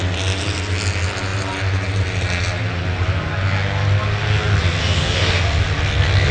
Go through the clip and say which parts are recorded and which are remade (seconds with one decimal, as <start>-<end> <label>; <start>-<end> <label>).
0.0-4.8 recorded; 4.8-5.4 remade; 5.4-6.3 recorded

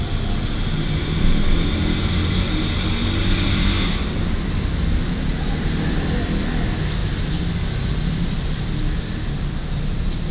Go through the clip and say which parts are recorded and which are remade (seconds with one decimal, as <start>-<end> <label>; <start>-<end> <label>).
0.0-3.6 recorded; 3.6-4.2 remade; 4.2-10.3 recorded

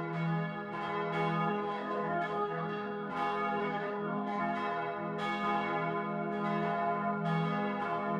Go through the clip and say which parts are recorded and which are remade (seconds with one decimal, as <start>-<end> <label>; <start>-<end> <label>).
0.0-1.5 recorded; 1.5-3.1 remade; 3.1-3.6 recorded; 3.6-4.4 remade; 4.4-8.2 recorded

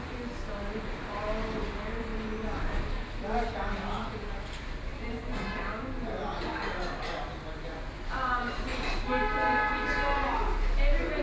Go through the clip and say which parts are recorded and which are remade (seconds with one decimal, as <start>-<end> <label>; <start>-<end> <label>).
0.0-11.2 recorded

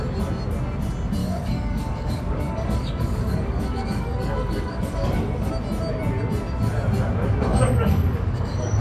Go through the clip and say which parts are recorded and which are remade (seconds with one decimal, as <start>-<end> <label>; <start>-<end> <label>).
0.0-1.2 recorded; 1.2-5.5 remade; 5.5-7.5 recorded; 7.5-8.8 remade

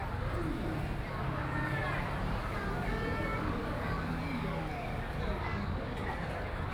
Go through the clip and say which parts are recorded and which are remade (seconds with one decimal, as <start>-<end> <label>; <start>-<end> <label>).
0.0-1.1 recorded; 1.1-1.8 remade; 1.8-2.8 recorded; 2.8-6.7 remade